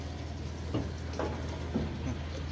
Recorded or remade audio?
recorded